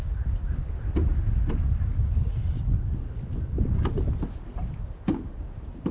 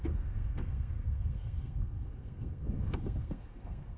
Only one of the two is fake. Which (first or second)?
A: second